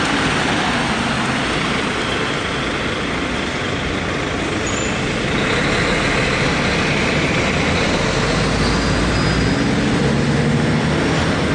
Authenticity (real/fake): real